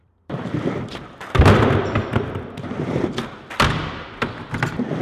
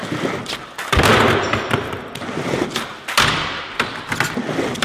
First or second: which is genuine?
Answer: second